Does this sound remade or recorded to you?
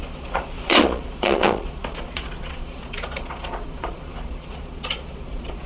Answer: remade